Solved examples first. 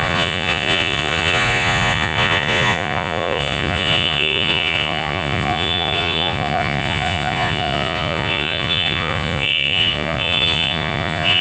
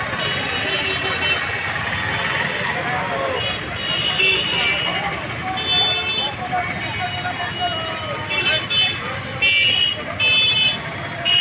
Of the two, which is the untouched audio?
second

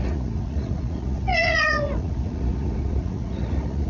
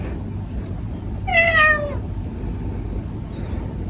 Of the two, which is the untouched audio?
second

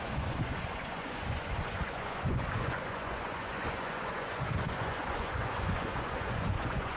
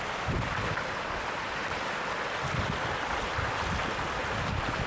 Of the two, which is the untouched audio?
second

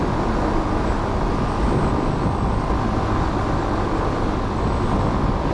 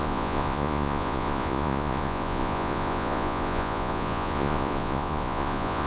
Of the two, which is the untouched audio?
first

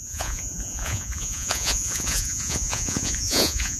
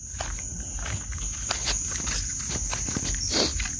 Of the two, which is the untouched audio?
second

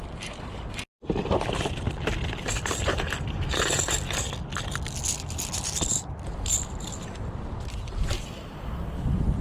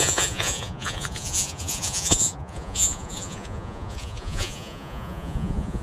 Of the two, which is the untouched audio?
first